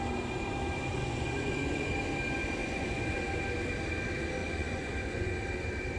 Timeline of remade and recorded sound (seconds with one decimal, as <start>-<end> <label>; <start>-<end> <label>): 0.0-0.9 recorded; 0.9-1.9 remade; 1.9-2.6 recorded; 2.6-3.2 remade; 3.2-4.4 recorded; 4.4-5.4 remade; 5.4-6.0 recorded